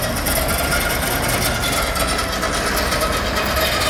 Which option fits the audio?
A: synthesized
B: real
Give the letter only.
B